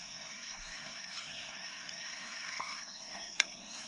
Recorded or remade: remade